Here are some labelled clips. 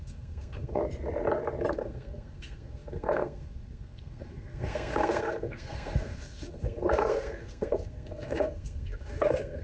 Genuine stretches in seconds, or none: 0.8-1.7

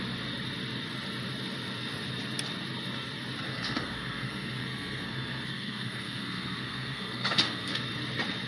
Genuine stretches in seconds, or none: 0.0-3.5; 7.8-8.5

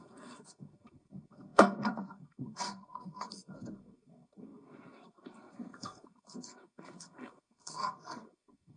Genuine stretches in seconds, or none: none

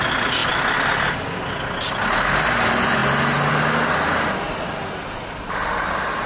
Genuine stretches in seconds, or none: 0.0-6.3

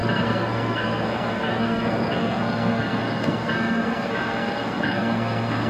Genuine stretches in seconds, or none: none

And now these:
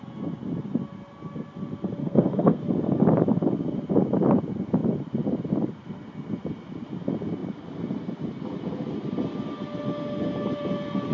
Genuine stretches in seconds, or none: 0.0-2.0; 2.6-11.1